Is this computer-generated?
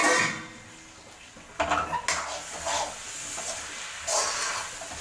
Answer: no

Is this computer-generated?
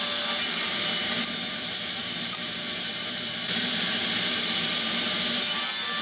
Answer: yes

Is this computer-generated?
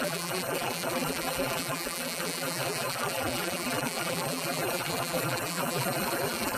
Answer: yes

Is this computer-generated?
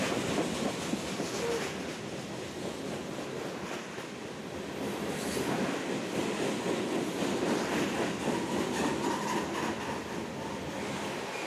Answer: no